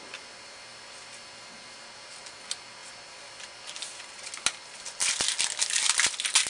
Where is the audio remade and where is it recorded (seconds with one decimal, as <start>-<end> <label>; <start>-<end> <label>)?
0.0-6.5 recorded